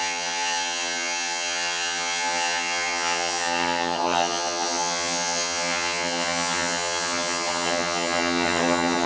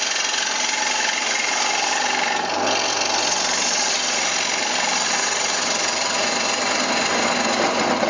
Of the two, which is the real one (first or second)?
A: second